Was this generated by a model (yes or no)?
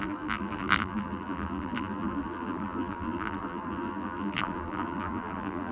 yes